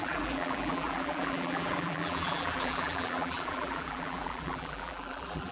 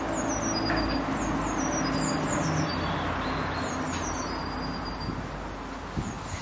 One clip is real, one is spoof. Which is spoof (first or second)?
first